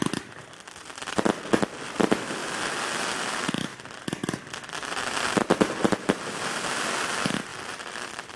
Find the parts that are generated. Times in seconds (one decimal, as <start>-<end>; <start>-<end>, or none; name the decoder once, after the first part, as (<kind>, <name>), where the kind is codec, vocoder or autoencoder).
0.0-1.0 (vocoder, BigVGAN v2); 1.8-2.4; 3.2-3.7; 4.9-8.4